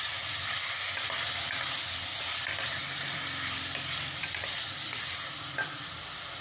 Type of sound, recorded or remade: recorded